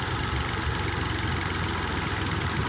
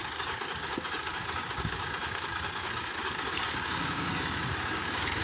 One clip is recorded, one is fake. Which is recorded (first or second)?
first